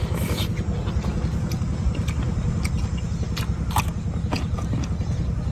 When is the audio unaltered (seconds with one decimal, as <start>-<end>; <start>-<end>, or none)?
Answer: 0.0-5.5